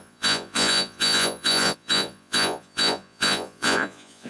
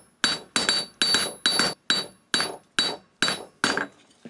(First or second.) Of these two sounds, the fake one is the first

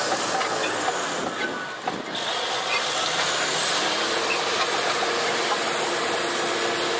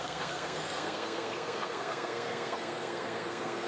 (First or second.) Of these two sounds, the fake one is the second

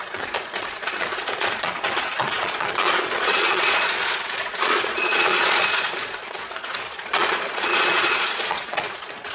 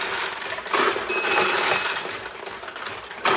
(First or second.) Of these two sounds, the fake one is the first